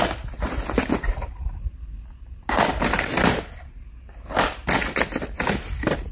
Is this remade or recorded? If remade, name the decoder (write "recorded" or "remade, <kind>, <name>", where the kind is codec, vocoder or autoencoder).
recorded